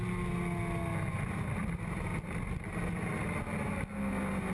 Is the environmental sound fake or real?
real